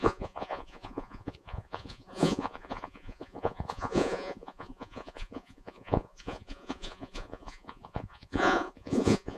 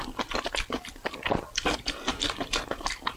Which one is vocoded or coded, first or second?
first